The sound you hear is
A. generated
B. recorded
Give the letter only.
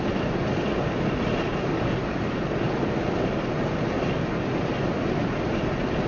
B